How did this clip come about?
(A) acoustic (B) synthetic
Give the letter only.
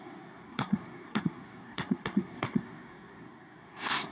B